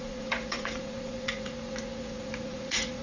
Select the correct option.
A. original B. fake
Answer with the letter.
B